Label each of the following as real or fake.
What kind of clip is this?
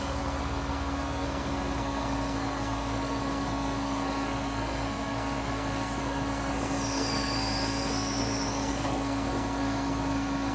fake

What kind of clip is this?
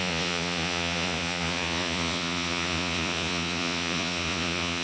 fake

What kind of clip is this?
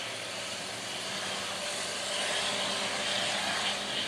real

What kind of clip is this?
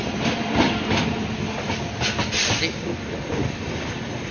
real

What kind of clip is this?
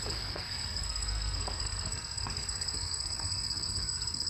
fake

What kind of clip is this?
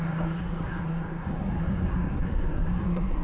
fake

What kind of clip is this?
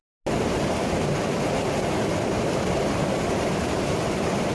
real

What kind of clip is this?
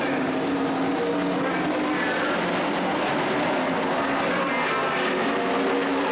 real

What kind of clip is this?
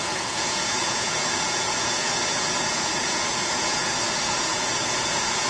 fake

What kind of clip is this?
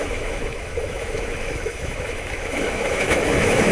fake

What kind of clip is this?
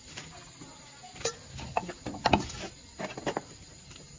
real